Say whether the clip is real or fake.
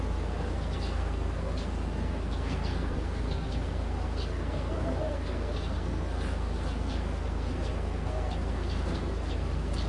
fake